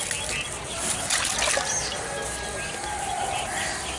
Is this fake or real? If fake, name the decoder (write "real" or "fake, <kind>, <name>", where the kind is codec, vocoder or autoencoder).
real